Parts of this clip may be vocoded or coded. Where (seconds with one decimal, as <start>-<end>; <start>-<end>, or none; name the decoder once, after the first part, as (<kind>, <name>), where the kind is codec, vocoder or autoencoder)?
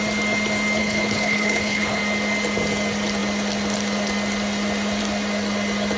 0.8-2.0 (codec, HILCodec)